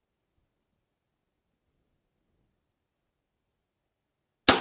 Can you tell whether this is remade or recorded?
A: recorded